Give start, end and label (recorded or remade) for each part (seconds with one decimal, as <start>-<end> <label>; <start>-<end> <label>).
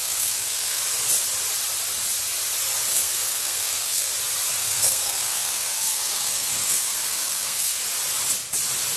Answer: 0.0-0.8 remade; 0.8-2.9 recorded; 2.9-4.1 remade; 4.1-4.6 recorded; 4.6-7.8 remade; 7.8-9.0 recorded